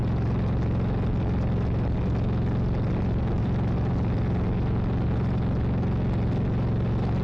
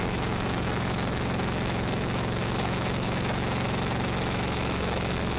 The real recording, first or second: first